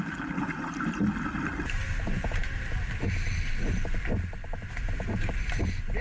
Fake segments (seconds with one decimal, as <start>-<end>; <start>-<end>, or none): 2.4-3.0